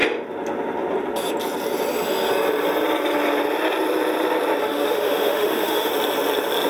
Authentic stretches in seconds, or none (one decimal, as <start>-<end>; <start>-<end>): 0.0-4.6; 5.9-6.7